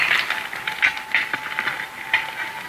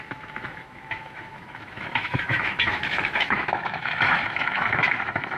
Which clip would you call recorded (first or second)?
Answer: first